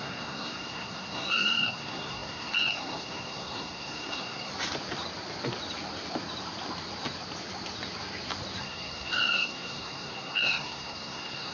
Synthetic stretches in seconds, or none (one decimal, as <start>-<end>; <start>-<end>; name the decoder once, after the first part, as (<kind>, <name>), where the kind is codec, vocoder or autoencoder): 0.0-4.5 (codec, SNAC); 8.6-11.5